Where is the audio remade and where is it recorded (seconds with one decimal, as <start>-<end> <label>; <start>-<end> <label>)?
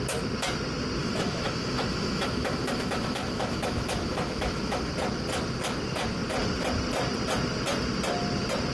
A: 0.0-1.0 recorded; 1.0-4.9 remade; 4.9-8.7 recorded